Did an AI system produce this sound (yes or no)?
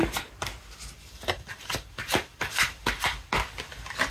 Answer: no